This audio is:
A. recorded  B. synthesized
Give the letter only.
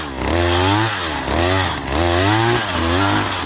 A